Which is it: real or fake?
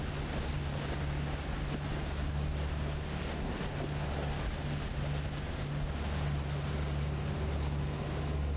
real